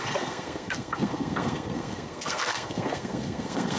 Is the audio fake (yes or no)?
yes